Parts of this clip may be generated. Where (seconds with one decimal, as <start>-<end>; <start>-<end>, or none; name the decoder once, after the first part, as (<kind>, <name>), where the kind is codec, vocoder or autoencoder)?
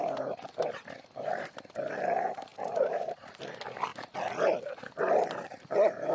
2.5-3.4 (vocoder, BigVGAN v2)